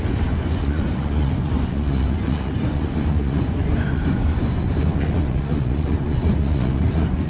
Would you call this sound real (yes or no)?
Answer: no